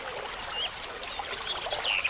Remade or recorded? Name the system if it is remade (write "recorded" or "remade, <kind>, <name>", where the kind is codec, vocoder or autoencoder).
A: recorded